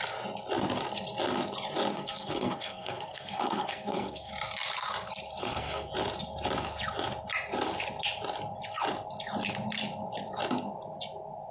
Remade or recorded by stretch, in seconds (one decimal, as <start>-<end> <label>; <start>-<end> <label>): 0.0-1.9 recorded; 1.9-4.3 remade; 4.3-5.4 recorded; 5.4-5.9 remade; 5.9-11.5 recorded